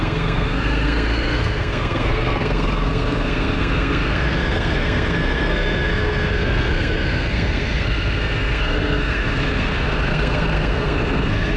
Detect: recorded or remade remade